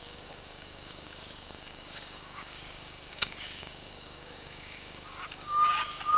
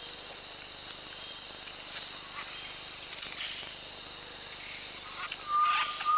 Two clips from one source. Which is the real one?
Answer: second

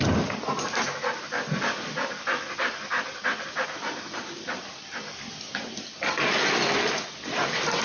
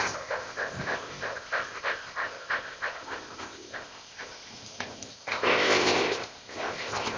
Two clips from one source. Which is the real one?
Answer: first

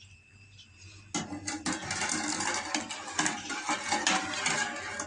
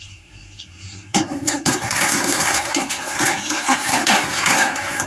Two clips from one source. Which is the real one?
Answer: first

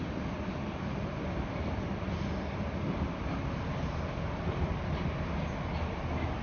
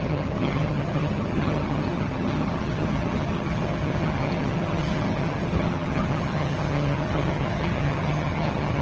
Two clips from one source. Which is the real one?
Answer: first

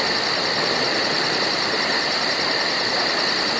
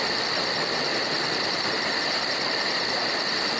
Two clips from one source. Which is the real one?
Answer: first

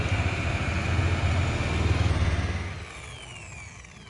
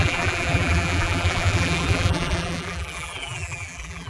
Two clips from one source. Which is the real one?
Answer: first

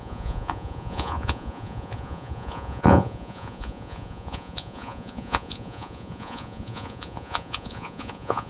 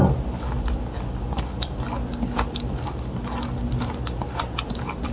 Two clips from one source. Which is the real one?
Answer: second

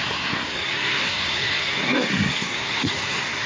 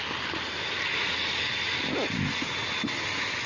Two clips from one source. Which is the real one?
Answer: second